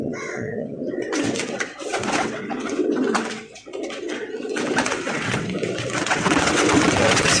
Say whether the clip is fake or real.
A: fake